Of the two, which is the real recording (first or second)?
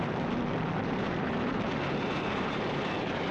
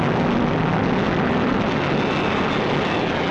second